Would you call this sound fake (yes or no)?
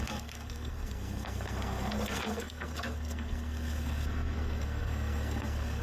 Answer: yes